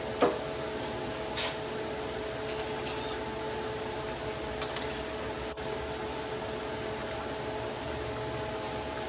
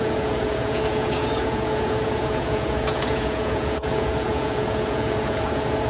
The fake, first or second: second